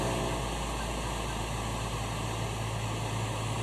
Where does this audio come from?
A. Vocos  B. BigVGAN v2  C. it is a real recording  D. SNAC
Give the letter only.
C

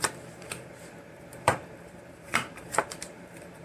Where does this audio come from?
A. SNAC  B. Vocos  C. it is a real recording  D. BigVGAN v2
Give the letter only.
D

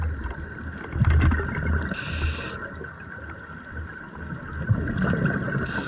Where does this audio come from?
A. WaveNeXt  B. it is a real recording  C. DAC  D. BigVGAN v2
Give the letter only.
B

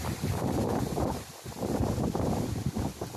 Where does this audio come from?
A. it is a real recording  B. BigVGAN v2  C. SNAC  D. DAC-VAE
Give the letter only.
B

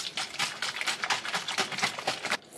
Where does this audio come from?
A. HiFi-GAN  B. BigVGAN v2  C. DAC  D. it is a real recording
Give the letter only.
D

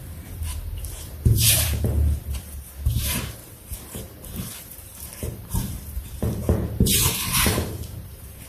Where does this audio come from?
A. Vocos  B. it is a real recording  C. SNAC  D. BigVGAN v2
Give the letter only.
D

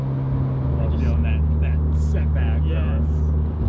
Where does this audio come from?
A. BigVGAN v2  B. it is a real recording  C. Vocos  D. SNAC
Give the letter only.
B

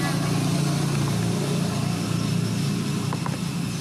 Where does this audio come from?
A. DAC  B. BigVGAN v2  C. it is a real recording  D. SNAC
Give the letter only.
C